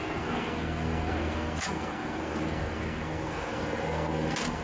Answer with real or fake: fake